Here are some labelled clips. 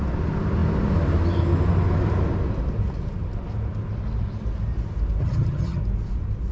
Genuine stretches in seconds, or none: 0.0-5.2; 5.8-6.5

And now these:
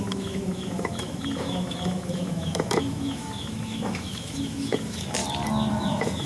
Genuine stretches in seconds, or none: 5.2-5.7

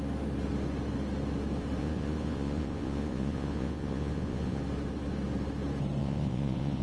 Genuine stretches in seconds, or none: 0.0-1.8; 4.6-6.0